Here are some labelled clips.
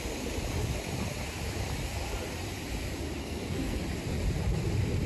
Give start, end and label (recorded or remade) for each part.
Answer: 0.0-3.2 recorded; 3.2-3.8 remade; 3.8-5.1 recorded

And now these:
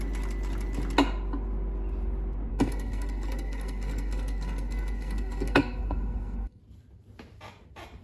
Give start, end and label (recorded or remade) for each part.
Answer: 0.0-2.5 recorded; 2.5-6.6 remade; 6.6-8.0 recorded

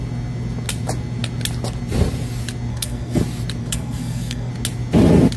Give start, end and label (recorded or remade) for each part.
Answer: 0.0-2.7 recorded; 2.7-3.2 remade; 3.2-3.6 recorded; 3.6-4.5 remade; 4.5-5.4 recorded